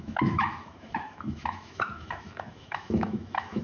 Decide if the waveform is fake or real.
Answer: fake